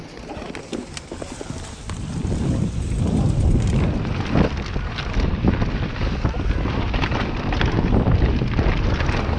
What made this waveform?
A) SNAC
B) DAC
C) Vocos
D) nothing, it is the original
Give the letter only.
D